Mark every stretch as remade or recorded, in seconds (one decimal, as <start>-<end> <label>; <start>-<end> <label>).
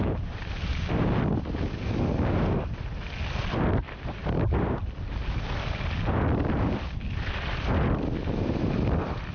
0.0-9.3 recorded